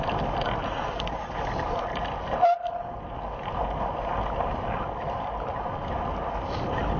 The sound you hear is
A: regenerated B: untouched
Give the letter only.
B